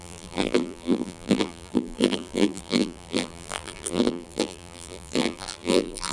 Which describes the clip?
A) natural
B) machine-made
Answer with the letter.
B